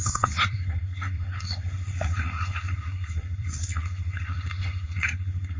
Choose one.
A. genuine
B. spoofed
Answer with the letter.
B